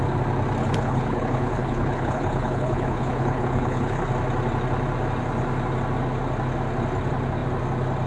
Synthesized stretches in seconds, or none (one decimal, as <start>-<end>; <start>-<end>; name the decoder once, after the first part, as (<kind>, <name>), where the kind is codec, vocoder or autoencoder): 0.6-4.1 (codec, HILCodec)

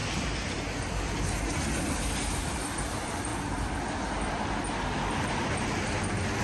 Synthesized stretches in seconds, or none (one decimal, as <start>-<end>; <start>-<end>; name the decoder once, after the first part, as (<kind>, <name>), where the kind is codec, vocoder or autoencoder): none

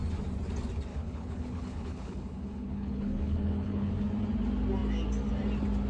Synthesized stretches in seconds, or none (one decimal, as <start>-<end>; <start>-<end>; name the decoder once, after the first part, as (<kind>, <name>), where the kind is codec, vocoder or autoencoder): 0.9-3.9 (codec, HILCodec)

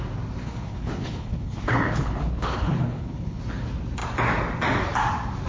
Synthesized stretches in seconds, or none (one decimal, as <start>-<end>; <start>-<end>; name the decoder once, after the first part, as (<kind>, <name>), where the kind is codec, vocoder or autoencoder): 0.4-3.4 (codec, HILCodec)

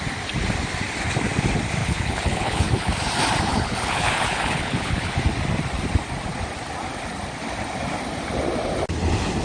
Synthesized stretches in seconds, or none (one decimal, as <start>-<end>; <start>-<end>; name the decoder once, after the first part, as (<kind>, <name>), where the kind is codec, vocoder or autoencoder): 1.8-3.0 (codec, HILCodec); 3.5-5.1

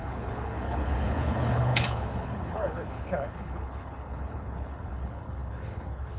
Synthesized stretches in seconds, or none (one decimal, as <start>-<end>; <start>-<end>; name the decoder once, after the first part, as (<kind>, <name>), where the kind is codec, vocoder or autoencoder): 0.0-6.2 (codec, HILCodec)

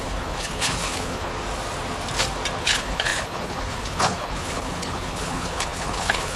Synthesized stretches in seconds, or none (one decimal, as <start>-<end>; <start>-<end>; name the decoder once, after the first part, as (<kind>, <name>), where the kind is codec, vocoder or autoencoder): 0.0-1.3 (codec, HILCodec); 2.6-6.4

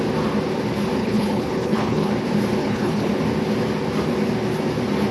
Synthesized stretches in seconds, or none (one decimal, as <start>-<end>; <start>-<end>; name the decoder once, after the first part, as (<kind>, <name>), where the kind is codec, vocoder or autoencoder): 1.0-2.1 (codec, HILCodec); 2.6-3.1